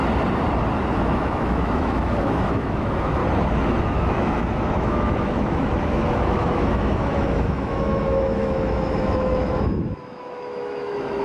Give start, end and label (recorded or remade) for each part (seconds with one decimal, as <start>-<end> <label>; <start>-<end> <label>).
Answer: 0.0-0.9 recorded; 0.9-3.2 remade; 3.2-3.8 recorded; 3.8-11.2 remade